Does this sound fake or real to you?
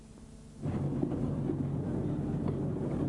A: real